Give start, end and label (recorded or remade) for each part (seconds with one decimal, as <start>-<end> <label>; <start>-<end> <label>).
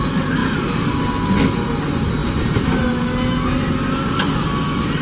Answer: 0.0-5.0 recorded